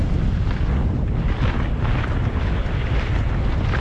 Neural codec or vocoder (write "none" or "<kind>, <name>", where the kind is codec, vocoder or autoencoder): none